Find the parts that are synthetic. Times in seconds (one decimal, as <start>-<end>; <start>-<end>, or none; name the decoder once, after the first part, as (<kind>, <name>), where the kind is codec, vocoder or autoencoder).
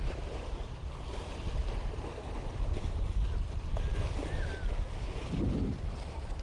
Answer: none